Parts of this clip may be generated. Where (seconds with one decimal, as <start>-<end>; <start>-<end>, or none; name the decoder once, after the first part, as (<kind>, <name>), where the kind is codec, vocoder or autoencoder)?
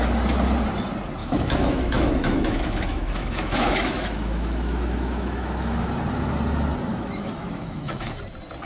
1.2-5.9 (autoencoder, DAC-VAE); 6.9-8.2